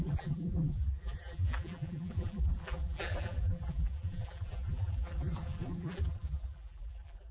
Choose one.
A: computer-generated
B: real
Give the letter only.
A